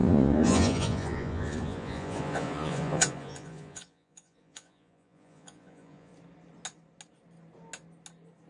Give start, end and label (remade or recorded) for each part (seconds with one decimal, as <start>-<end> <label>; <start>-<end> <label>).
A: 0.0-6.1 remade; 6.1-8.5 recorded